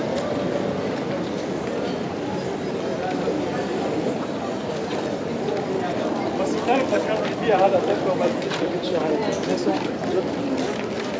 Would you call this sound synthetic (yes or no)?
no